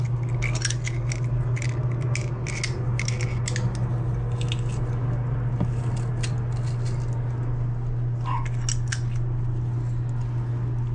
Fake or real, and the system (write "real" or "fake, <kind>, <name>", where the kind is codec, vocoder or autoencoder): real